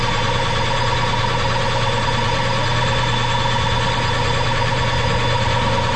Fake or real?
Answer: real